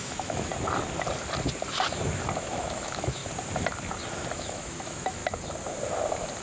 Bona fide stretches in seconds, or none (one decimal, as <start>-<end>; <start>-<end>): 0.5-2.4; 3.2-4.3; 5.2-6.4